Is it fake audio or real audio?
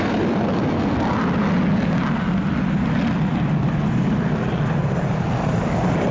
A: real